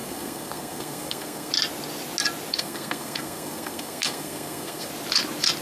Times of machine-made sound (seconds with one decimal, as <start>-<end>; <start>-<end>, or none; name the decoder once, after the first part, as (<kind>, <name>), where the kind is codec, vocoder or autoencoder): 0.0-1.5 (codec, SNAC); 2.5-4.9